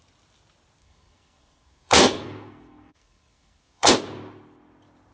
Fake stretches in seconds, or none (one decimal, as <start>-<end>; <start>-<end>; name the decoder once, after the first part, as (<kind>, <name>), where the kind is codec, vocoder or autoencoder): 0.8-3.9 (codec, SNAC)